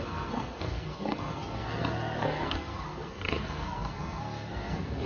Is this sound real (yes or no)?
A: no